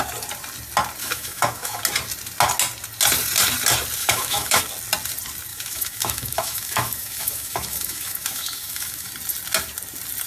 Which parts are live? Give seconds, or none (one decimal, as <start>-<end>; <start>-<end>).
0.0-1.0; 1.8-4.0; 4.6-5.5; 9.1-10.3